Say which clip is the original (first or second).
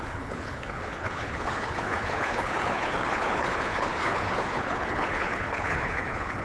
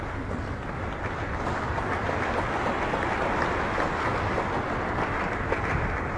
second